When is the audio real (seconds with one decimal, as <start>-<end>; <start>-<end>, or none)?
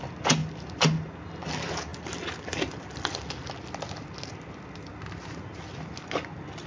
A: 0.0-6.7